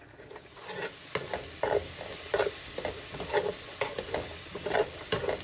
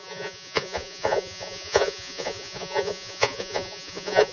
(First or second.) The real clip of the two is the first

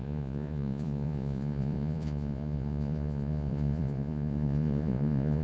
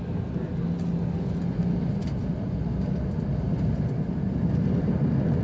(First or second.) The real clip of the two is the second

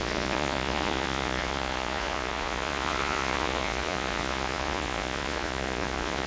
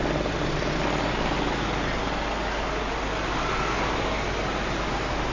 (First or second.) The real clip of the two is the second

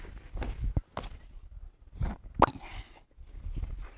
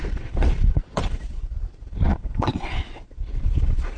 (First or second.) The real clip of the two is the first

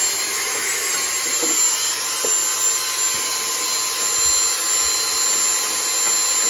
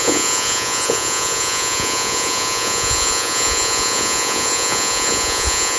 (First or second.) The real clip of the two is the first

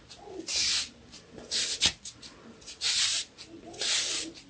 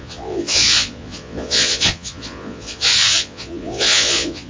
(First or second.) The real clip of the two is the first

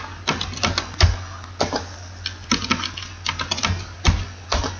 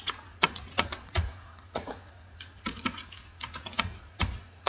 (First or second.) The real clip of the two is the first